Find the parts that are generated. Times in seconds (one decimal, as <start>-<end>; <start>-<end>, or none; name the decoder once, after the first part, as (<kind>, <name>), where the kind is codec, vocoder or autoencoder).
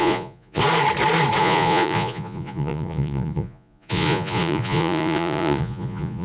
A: 0.0-0.6 (vocoder, Vocos); 1.4-6.2